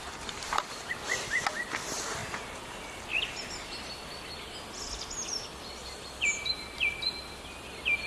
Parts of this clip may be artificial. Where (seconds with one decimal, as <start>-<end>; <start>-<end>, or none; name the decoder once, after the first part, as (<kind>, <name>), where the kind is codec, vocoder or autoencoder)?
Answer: none